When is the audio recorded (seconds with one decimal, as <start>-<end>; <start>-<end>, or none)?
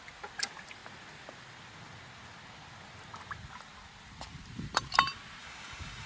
0.0-5.4